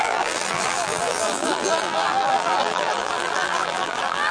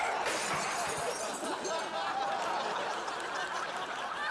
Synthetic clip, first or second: first